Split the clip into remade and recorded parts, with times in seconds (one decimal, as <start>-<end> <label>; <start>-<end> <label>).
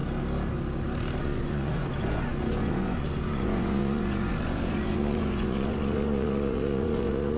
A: 0.0-1.2 recorded; 1.2-7.4 remade